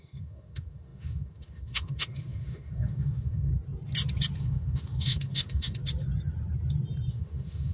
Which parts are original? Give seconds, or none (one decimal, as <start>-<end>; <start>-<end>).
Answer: 3.5-4.4; 5.8-7.1

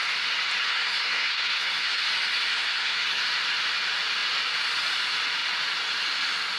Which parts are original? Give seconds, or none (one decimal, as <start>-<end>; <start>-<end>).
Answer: 0.0-0.7; 2.0-2.5; 3.2-6.6

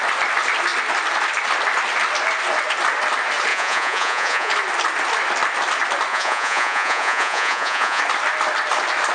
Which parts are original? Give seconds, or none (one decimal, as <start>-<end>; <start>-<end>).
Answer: 0.0-3.5; 4.5-6.1; 8.0-9.1

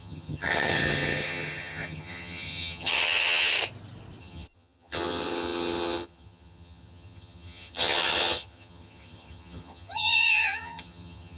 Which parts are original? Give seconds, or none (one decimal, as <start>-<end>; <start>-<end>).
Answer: 3.5-4.2

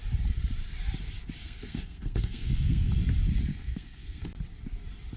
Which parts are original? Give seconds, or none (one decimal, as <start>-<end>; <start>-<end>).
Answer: 0.0-1.4; 2.9-3.5; 4.2-5.2

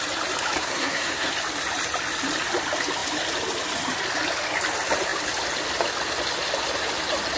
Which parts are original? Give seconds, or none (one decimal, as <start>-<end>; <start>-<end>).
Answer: 0.0-0.6; 1.3-7.4

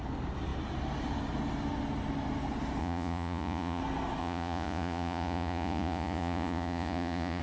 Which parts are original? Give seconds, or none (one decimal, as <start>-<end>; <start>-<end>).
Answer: 0.0-2.8; 3.8-4.2

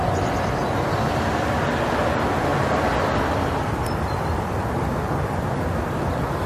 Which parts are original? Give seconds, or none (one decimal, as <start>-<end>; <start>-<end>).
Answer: 0.0-6.5